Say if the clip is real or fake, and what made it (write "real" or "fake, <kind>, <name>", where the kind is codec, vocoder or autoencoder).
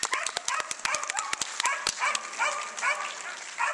real